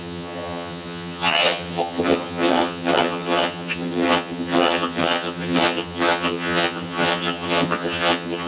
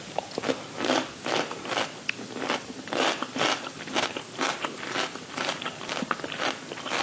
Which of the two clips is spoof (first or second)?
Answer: first